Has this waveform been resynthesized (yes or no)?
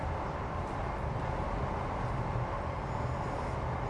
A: no